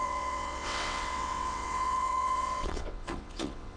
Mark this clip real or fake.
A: fake